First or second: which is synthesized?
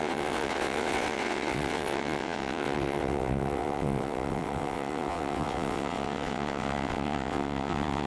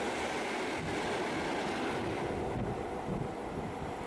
first